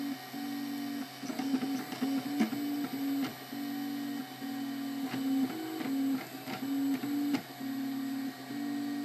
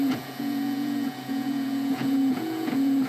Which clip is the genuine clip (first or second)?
first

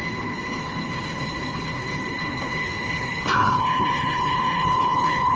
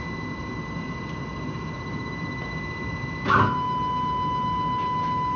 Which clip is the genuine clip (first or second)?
second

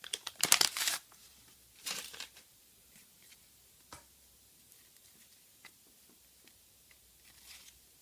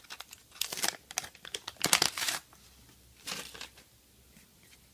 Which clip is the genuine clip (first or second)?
second